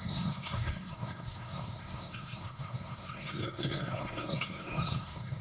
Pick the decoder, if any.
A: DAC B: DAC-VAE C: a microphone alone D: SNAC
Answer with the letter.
D